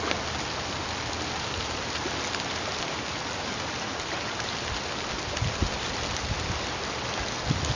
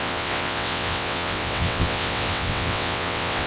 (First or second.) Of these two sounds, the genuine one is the first